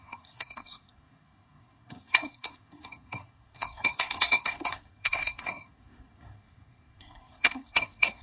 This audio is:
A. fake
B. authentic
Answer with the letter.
A